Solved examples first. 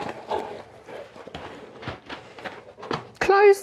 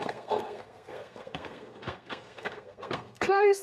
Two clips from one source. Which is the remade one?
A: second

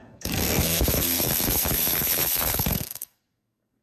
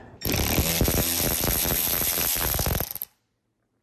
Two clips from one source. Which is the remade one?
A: first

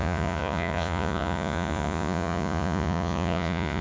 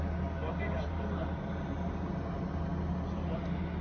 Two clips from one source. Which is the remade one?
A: first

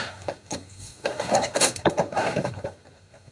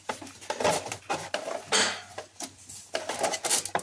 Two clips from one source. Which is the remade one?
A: first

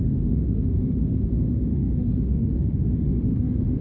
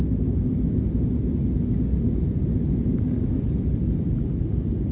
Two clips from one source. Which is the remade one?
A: first